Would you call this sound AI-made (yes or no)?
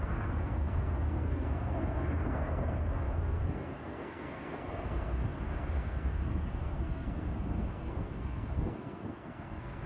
yes